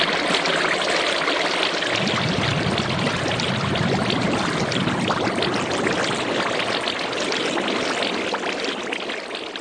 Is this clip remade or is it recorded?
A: recorded